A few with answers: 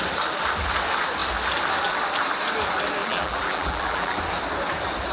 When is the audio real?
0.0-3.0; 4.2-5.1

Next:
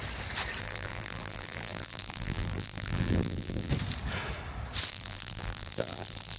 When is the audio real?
0.0-0.6; 3.7-4.9